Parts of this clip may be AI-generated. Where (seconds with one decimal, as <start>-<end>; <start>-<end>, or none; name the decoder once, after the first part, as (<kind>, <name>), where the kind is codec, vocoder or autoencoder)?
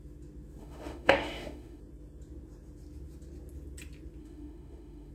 0.6-1.8 (autoencoder, DAC-VAE); 4.2-5.1